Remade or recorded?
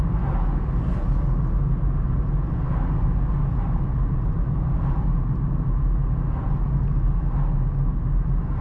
recorded